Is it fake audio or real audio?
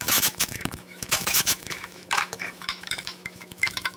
fake